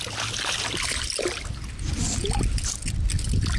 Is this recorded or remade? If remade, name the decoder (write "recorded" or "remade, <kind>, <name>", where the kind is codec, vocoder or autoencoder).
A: recorded